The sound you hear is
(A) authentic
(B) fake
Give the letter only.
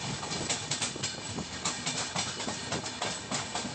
A